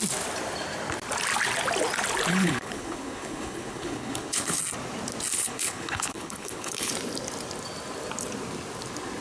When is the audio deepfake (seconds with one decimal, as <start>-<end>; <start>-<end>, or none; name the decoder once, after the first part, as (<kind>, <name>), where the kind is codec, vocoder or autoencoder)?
2.3-4.6 (codec, HILCodec); 5.3-6.9